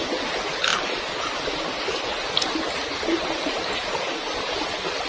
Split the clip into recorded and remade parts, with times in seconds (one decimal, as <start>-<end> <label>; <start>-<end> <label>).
0.0-5.1 recorded